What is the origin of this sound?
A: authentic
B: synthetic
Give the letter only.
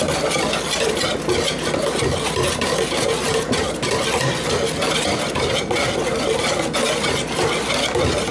A